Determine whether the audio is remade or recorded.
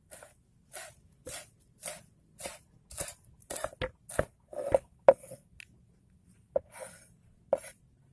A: recorded